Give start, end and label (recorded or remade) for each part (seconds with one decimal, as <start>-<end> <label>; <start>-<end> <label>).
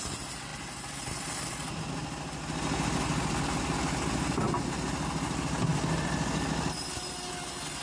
0.0-7.8 recorded